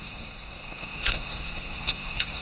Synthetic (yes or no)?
yes